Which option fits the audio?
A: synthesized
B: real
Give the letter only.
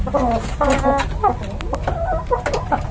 B